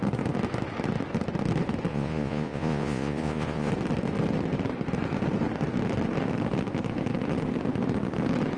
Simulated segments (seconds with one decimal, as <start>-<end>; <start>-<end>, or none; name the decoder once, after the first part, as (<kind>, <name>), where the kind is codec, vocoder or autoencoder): 1.9-3.7 (vocoder, Vocos)